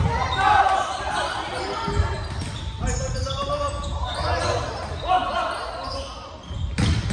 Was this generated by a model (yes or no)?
no